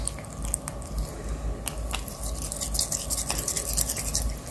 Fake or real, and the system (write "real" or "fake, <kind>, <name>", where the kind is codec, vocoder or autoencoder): real